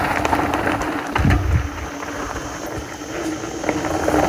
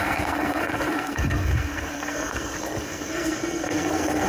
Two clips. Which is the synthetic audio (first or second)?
second